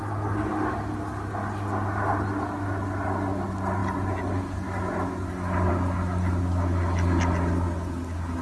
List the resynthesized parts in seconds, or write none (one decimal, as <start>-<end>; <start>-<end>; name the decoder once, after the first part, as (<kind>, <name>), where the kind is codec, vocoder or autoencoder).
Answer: none